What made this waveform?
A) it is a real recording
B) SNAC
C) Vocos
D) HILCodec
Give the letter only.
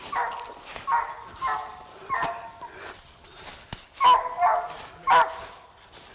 A